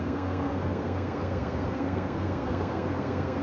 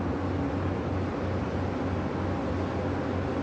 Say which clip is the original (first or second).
second